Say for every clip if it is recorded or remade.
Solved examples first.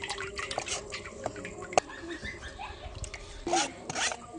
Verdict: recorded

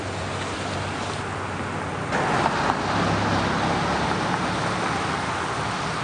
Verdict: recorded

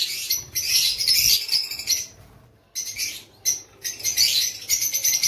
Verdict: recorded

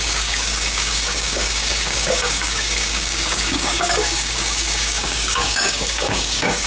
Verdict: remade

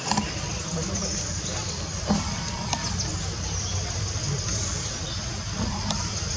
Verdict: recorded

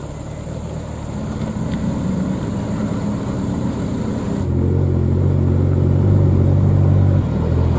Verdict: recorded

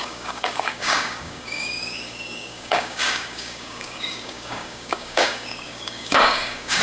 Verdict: remade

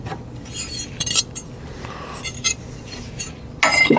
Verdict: recorded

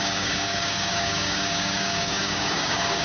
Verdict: remade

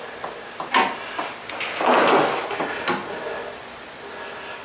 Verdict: recorded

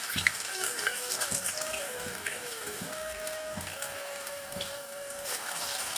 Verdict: remade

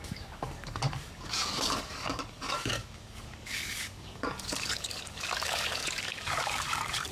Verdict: remade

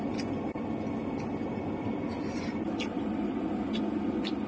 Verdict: recorded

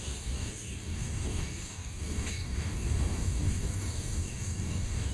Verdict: remade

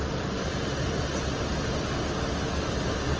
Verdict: recorded